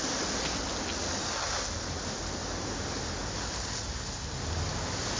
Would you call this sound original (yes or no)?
yes